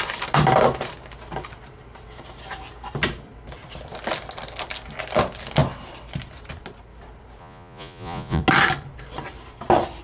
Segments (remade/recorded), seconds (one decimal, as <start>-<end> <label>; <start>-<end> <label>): 0.0-7.4 recorded; 7.4-8.4 remade; 8.4-10.0 recorded